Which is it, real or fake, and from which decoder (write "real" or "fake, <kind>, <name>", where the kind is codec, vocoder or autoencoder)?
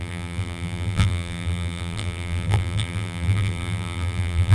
fake, vocoder, BigVGAN v2